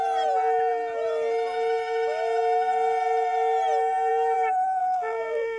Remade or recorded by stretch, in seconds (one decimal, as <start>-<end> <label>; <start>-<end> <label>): 0.0-4.8 recorded; 4.8-5.6 remade